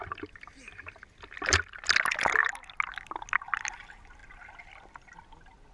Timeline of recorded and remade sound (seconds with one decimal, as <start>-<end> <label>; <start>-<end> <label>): 0.0-5.7 recorded